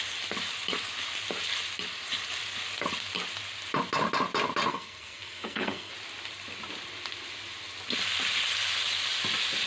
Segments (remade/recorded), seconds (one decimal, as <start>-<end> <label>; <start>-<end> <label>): 0.0-4.7 recorded; 4.7-5.9 remade; 5.9-9.7 recorded